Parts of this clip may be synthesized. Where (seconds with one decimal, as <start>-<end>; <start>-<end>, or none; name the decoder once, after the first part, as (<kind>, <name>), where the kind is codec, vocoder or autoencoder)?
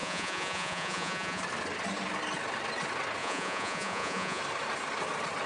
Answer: 0.0-1.4 (vocoder, Vocos); 3.2-4.4